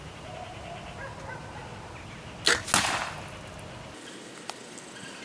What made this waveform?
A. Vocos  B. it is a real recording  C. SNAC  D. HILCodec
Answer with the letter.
B